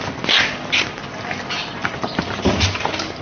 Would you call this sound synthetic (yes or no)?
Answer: no